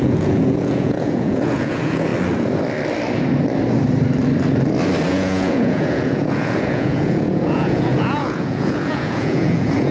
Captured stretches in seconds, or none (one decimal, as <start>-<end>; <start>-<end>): 2.1-5.1